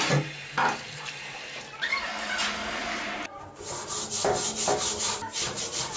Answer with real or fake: real